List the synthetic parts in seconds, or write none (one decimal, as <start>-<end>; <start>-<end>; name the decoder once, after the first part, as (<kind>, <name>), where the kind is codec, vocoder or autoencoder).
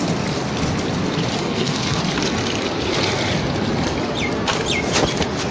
1.4-2.0 (codec, SNAC)